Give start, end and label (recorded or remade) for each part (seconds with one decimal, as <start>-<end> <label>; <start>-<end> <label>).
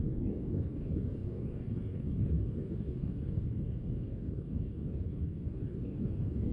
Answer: 0.0-6.5 remade